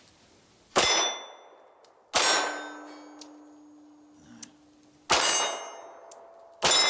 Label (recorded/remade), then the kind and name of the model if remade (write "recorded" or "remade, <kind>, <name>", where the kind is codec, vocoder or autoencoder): recorded